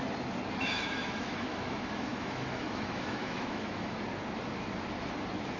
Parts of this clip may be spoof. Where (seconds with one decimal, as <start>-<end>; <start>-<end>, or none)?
0.6-4.0